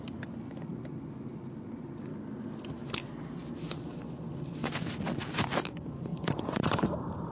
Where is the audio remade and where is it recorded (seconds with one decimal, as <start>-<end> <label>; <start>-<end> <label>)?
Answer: 0.0-6.1 recorded; 6.1-7.3 remade